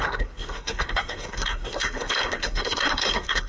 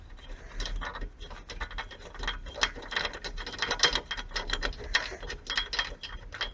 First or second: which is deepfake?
first